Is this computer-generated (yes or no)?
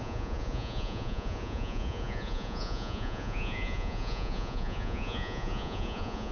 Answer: yes